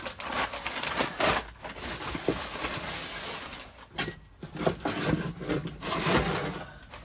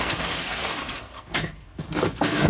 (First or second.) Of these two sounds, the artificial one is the second